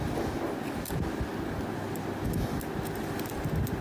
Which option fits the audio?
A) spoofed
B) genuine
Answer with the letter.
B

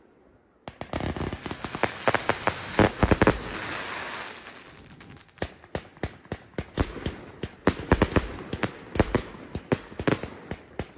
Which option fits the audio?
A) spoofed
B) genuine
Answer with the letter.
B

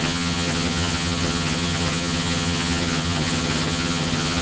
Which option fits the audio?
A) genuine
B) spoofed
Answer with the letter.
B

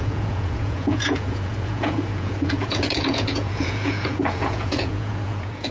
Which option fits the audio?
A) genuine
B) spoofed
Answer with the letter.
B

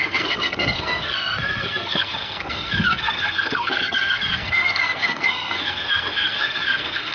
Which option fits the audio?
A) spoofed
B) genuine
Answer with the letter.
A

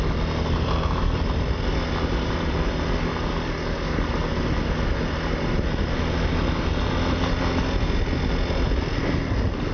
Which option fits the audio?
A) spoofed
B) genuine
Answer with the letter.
B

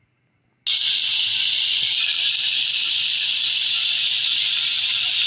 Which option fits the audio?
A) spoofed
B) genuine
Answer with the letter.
B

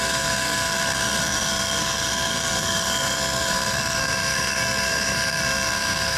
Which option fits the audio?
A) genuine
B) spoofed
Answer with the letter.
B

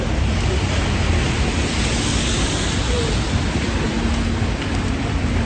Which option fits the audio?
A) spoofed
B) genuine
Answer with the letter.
B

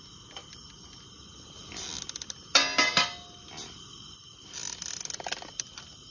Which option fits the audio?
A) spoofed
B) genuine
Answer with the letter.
B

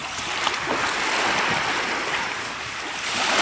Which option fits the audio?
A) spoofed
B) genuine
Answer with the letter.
B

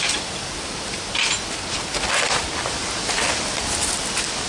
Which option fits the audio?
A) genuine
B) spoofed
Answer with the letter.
A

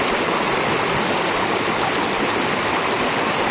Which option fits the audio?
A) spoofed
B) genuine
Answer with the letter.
B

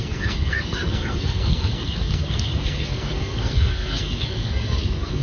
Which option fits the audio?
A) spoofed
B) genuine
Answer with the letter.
A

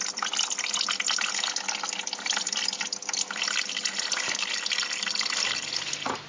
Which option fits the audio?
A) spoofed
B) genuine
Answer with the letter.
B